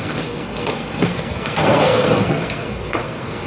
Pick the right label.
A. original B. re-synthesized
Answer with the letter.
B